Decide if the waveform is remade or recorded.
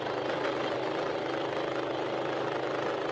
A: recorded